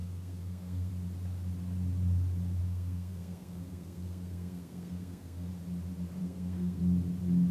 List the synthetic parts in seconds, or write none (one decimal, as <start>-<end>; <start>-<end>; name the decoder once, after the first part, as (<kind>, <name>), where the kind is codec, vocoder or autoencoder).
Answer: 0.0-0.9 (codec, SNAC); 2.6-5.5; 6.2-6.8